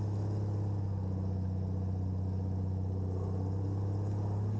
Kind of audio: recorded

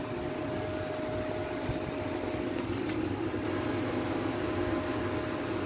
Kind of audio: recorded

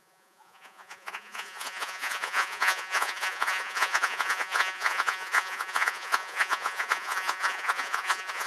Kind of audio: remade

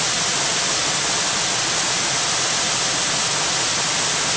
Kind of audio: recorded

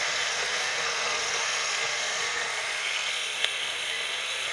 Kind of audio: remade